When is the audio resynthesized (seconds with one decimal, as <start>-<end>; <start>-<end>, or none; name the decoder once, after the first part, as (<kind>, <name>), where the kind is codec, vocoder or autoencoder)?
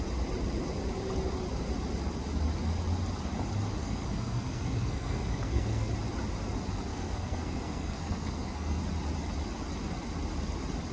3.8-5.9 (codec, SNAC); 6.9-8.8